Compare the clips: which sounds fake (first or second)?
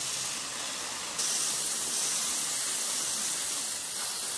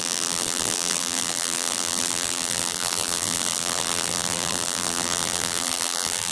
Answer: second